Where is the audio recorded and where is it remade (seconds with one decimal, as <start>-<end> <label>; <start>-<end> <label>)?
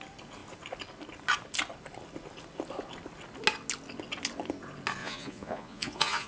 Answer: 0.0-5.0 recorded; 5.0-6.3 remade